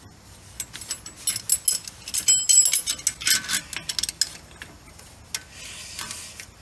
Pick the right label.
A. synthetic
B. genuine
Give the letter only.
B